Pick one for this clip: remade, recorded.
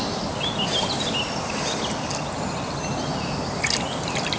recorded